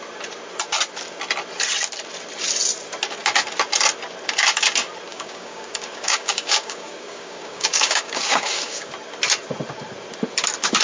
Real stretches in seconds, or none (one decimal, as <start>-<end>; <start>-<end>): 0.0-5.1; 8.9-10.8